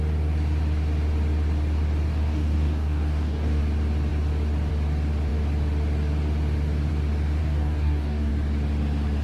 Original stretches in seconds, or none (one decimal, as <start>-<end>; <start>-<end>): 0.0-2.1; 3.6-7.4; 8.3-9.2